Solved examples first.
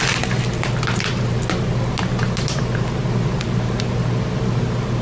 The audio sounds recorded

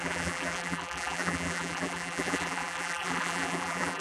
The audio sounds remade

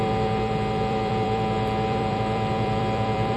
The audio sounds remade